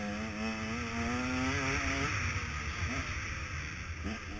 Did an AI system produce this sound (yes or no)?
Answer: no